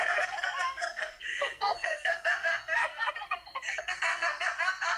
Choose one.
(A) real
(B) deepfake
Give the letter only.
B